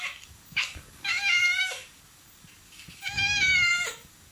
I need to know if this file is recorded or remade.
remade